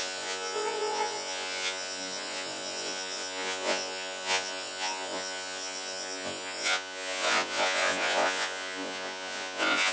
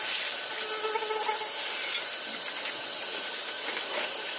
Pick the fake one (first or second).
first